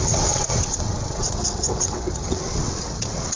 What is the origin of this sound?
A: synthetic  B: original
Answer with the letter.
A